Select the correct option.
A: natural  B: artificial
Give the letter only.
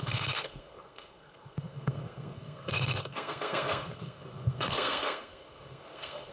B